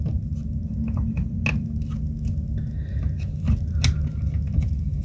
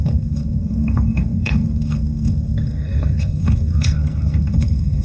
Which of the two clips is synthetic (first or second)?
second